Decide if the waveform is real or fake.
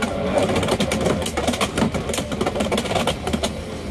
real